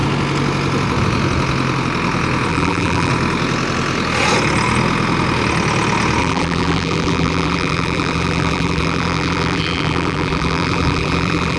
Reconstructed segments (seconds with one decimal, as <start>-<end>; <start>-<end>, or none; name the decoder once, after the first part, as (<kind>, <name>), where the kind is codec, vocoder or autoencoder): 2.5-3.1 (vocoder, BigVGAN v2); 6.2-11.6